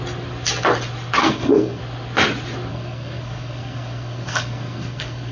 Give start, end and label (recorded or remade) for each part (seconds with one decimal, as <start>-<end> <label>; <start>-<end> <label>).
0.0-1.2 recorded; 1.2-1.8 remade; 1.8-2.7 recorded; 2.7-5.3 remade